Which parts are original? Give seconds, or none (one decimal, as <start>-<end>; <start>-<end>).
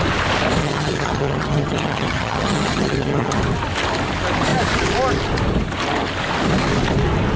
0.0-0.6; 3.4-7.4